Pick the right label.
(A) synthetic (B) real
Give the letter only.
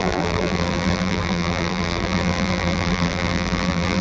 A